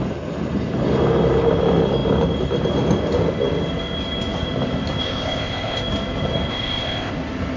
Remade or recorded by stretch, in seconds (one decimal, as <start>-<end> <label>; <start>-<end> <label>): 0.0-5.0 recorded; 5.0-5.8 remade; 5.8-6.5 recorded; 6.5-7.1 remade; 7.1-7.6 recorded